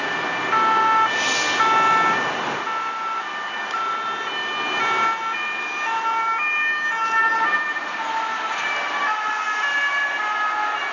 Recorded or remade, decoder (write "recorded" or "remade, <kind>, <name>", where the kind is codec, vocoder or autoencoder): recorded